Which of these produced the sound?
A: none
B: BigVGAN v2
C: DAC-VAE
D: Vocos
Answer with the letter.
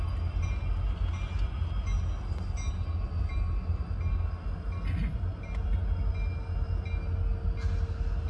A